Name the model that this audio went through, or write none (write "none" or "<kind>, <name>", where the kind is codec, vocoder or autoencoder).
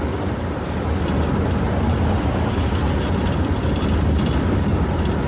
none